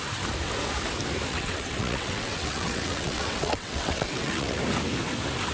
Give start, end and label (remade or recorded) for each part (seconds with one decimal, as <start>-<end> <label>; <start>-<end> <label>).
0.0-1.3 recorded; 1.3-4.6 remade; 4.6-5.5 recorded